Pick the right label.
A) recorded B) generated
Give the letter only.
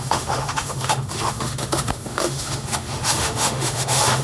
B